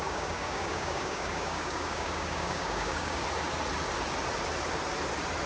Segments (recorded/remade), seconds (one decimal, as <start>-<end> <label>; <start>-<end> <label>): 0.0-3.2 remade; 3.2-5.5 recorded